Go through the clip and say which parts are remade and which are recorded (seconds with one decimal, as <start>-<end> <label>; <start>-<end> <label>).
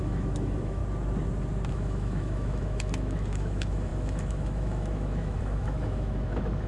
0.0-0.8 remade; 0.8-1.7 recorded; 1.7-6.7 remade